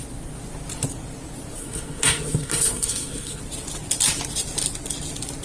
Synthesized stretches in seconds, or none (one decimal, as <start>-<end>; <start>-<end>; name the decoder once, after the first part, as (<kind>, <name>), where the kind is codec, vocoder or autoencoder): 1.6-3.4 (codec, SNAC)